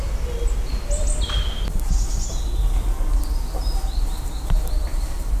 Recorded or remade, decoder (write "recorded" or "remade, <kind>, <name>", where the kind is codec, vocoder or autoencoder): recorded